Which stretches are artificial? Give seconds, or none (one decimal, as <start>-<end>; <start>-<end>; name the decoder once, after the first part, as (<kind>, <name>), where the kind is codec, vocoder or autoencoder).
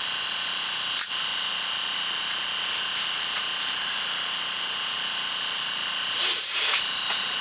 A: 0.0-7.4 (vocoder, BigVGAN v2)